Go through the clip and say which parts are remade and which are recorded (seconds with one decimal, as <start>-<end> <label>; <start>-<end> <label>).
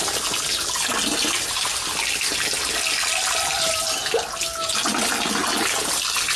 0.0-6.4 recorded